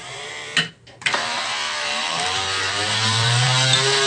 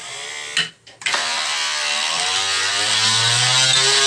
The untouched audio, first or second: second